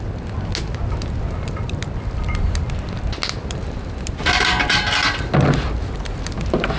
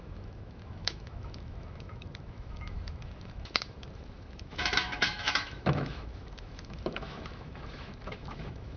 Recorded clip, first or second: first